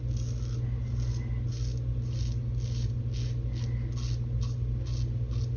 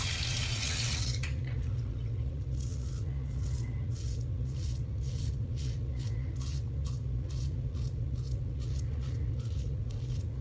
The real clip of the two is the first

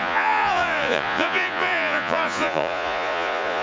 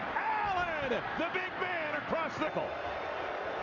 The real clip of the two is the second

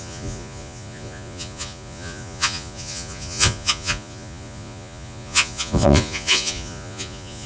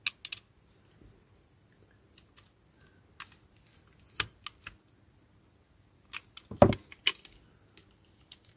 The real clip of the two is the second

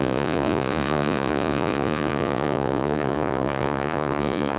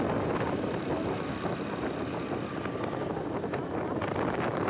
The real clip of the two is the second